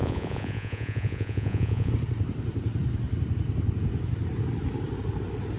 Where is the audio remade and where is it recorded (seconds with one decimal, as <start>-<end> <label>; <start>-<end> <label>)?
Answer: 0.0-1.9 remade; 1.9-5.6 recorded